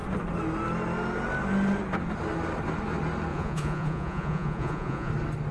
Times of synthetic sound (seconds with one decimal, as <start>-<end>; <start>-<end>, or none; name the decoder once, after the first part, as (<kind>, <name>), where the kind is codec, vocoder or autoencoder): 3.3-5.1 (vocoder, Vocos)